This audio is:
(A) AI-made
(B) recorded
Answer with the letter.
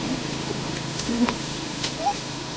A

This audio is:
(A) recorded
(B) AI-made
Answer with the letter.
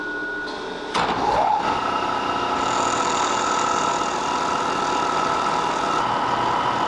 A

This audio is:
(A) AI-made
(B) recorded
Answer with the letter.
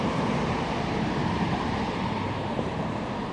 A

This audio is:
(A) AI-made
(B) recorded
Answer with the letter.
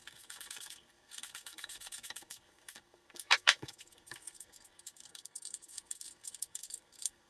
A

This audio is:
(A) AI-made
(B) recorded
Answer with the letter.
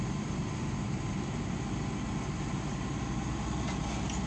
B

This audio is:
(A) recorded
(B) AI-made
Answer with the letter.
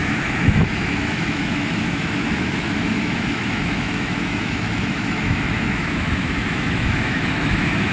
B